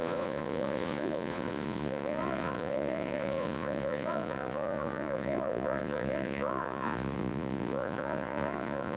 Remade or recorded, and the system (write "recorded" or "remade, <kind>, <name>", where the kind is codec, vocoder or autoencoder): remade, vocoder, Vocos